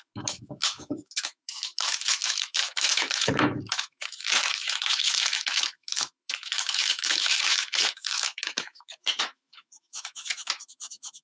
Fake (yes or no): yes